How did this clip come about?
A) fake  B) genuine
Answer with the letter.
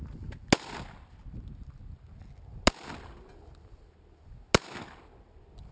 B